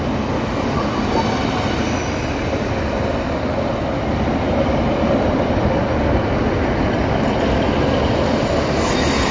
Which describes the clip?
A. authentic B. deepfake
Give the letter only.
A